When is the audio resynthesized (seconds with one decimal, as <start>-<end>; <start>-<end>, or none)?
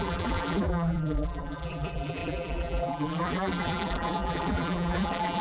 0.0-5.4